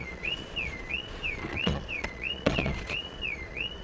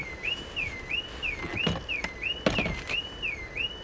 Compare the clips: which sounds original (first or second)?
second